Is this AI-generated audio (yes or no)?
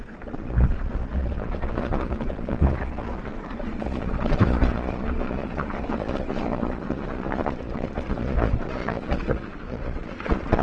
yes